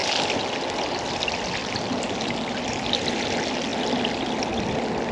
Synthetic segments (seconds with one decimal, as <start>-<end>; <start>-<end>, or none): none